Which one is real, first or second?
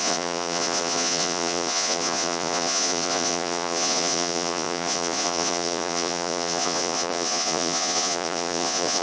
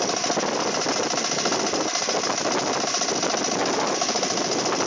second